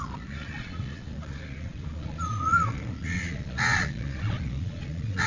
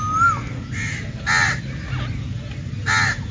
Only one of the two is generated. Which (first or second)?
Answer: first